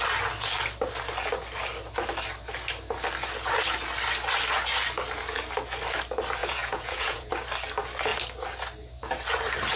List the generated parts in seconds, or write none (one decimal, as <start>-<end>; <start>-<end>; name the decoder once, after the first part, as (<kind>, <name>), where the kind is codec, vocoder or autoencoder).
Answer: 6.4-7.3 (vocoder, Vocos)